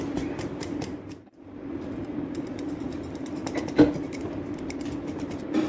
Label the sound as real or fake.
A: fake